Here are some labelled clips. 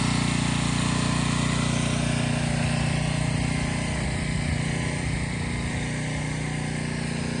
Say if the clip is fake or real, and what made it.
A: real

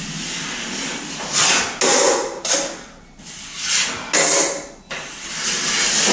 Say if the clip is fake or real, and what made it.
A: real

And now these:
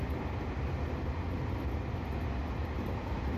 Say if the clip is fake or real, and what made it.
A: real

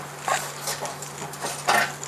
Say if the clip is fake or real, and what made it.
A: real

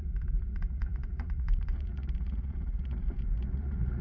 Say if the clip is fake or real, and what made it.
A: fake, vocoder, Vocos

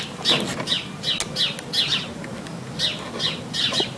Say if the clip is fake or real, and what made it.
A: real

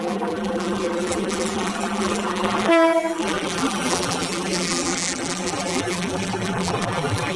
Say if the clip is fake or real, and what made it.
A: fake, vocoder, BigVGAN v2